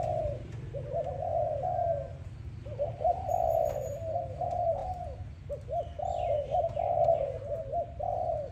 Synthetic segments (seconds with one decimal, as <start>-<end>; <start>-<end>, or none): none